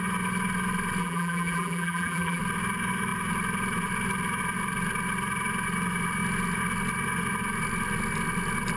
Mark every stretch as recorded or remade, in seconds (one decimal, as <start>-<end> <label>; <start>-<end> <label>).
0.0-1.0 recorded; 1.0-2.4 remade; 2.4-8.8 recorded